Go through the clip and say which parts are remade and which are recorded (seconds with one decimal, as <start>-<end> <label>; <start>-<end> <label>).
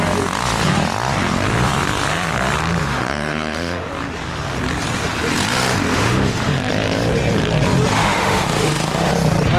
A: 0.0-2.8 recorded; 2.8-3.9 remade; 3.9-5.9 recorded; 5.9-6.7 remade; 6.7-7.9 recorded; 7.9-9.1 remade; 9.1-9.6 recorded